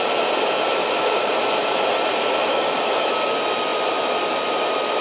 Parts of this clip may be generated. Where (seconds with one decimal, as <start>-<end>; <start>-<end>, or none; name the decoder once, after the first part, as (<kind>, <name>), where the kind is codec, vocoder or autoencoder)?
0.8-1.3 (codec, DAC); 2.5-3.1